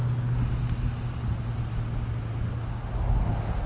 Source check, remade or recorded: recorded